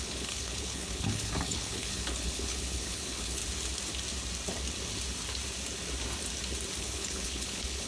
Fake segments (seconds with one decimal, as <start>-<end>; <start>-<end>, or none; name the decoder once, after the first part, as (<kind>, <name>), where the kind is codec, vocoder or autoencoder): 0.0-3.4 (codec, HILCodec); 6.8-7.9